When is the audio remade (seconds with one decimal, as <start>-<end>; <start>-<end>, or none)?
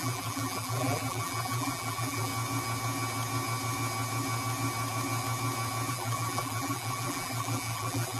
0.0-2.3; 5.9-8.2